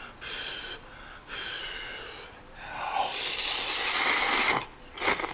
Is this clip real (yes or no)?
yes